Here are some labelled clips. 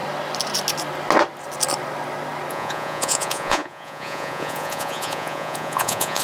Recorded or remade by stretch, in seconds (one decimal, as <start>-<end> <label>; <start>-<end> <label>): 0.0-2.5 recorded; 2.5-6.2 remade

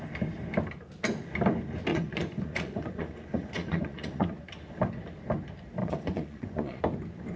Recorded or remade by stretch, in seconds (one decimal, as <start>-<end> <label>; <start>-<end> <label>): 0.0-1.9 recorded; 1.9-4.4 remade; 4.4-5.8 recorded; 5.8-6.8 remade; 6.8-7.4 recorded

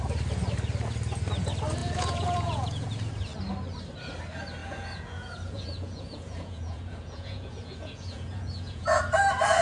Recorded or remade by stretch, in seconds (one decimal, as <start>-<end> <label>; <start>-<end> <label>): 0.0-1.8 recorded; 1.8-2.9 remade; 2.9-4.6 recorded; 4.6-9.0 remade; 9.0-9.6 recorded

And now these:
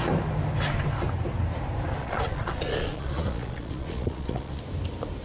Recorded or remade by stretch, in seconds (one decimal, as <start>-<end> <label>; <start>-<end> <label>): 0.0-2.0 recorded; 2.0-4.6 remade; 4.6-5.2 recorded

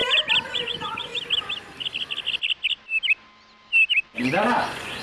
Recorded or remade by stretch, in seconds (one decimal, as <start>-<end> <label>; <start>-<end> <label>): 0.0-0.5 recorded; 0.5-1.1 remade; 1.1-4.1 recorded; 4.1-5.0 remade

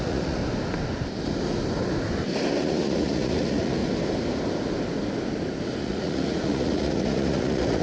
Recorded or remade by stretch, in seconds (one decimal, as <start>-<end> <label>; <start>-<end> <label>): 0.0-0.4 remade; 0.4-2.6 recorded; 2.6-3.8 remade; 3.8-5.8 recorded; 5.8-7.8 remade

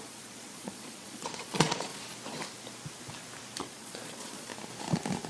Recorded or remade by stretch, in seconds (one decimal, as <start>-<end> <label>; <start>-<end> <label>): 0.0-1.9 remade; 1.9-3.6 recorded; 3.6-4.5 remade; 4.5-5.3 recorded

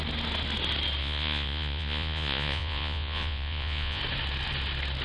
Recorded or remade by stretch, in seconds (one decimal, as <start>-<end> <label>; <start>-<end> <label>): 0.0-1.0 recorded; 1.0-4.0 remade; 4.0-5.0 recorded